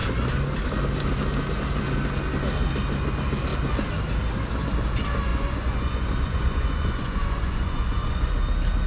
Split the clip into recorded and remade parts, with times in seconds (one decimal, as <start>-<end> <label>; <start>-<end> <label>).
0.0-5.3 recorded; 5.3-8.4 remade; 8.4-8.9 recorded